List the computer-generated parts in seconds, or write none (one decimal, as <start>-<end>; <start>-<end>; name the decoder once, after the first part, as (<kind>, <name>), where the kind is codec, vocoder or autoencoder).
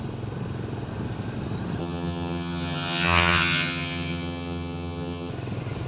1.8-5.3 (vocoder, HiFi-GAN)